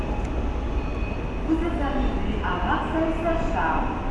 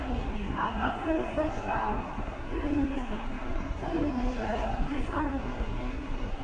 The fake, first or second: second